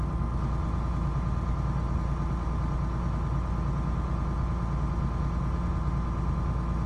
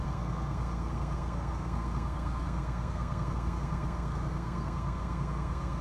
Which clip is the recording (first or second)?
first